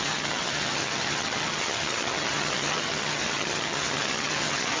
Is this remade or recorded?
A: remade